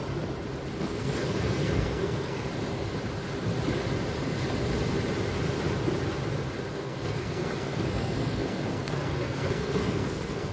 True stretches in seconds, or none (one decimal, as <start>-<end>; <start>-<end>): 0.0-0.8; 2.5-6.7